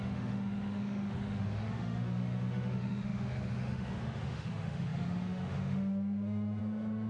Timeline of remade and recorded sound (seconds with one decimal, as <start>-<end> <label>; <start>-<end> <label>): 0.0-7.1 remade